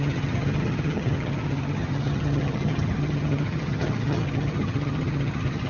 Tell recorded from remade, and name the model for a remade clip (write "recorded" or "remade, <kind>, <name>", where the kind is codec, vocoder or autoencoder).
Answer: remade, vocoder, HiFi-GAN